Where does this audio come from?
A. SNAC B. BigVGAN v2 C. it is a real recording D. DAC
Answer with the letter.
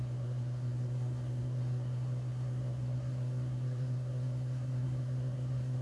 A